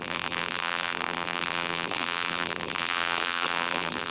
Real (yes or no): no